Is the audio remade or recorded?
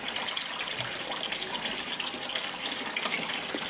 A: recorded